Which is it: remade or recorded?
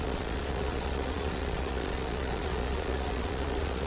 remade